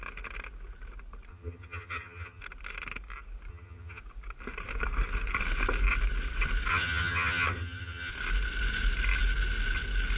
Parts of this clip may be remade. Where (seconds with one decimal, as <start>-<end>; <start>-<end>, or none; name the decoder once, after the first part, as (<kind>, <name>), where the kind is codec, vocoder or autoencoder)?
1.3-2.4 (vocoder, HiFi-GAN); 3.5-4.0; 6.7-8.1